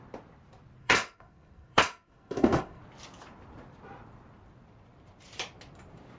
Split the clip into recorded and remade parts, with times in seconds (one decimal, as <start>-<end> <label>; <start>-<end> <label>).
0.0-0.8 recorded; 0.8-2.8 remade; 2.8-6.2 recorded